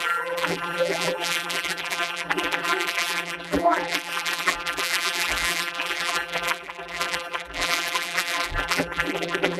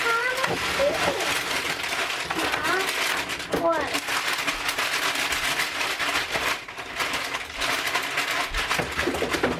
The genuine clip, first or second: second